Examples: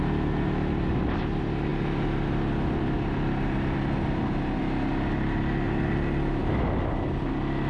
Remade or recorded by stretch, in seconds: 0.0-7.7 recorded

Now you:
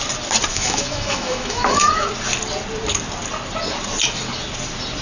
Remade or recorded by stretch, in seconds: 0.0-0.5 recorded; 0.5-2.1 remade; 2.1-5.0 recorded

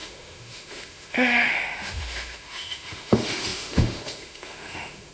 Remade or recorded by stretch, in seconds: 0.0-5.1 remade

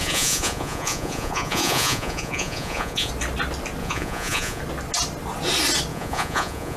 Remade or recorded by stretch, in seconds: 0.0-3.1 remade; 3.1-3.8 recorded; 3.8-4.6 remade; 4.6-5.9 recorded; 5.9-6.8 remade

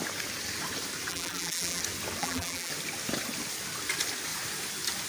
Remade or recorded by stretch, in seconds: 0.0-1.1 recorded; 1.1-1.8 remade; 1.8-2.2 recorded; 2.2-2.7 remade; 2.7-5.1 recorded

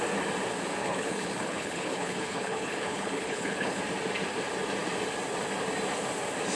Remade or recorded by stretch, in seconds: 0.0-0.8 recorded; 0.8-3.8 remade; 3.8-6.6 recorded

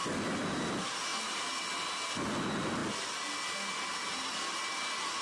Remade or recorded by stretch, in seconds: 0.0-5.2 recorded

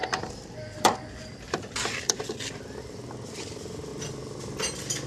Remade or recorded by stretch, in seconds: 0.0-3.1 remade; 3.1-5.1 recorded